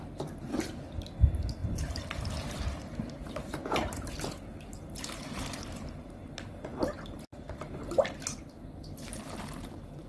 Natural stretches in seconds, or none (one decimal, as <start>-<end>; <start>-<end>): 0.0-1.6; 4.1-6.7; 7.8-10.1